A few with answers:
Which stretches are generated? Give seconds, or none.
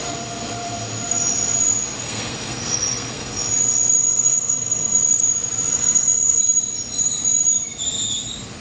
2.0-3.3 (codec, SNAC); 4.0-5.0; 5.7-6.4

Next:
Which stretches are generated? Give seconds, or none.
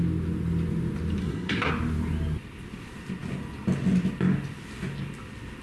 1.2-1.7 (codec, SNAC)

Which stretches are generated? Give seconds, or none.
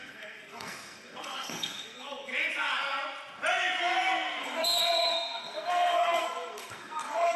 0.0-2.3 (codec, SNAC); 4.4-7.4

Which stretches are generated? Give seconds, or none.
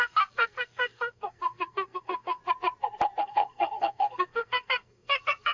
0.0-2.4 (codec, SNAC); 3.2-5.5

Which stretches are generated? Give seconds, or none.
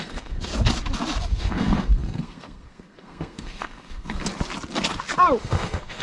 0.0-0.5 (codec, SNAC); 1.2-4.2; 5.4-6.0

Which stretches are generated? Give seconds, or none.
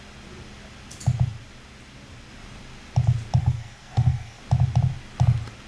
3.4-4.4 (codec, SNAC)